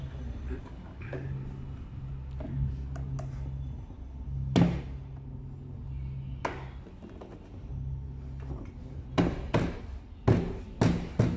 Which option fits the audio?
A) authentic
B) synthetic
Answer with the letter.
A